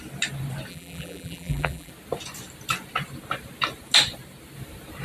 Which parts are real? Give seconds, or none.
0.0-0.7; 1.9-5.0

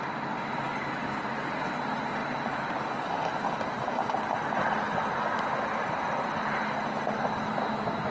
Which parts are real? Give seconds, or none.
0.0-8.1

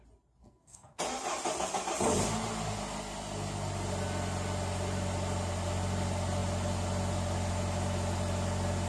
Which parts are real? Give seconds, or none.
0.0-0.4; 1.0-8.9

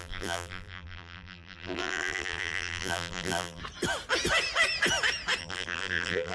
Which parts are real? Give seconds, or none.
3.6-5.4